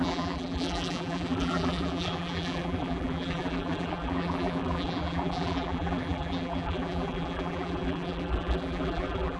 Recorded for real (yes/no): no